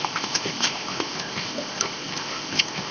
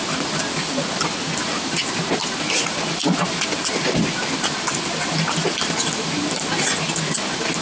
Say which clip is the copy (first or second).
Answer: first